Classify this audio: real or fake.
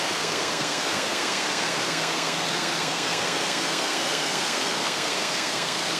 fake